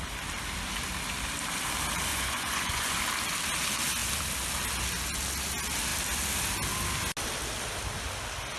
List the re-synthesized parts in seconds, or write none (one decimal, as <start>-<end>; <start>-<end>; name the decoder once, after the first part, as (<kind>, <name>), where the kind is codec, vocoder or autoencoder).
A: 2.1-3.0 (vocoder, Vocos)